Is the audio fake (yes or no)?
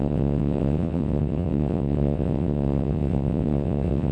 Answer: yes